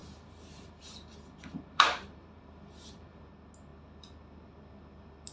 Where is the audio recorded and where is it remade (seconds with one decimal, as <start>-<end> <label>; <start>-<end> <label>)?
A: 0.0-3.2 remade; 3.2-5.3 recorded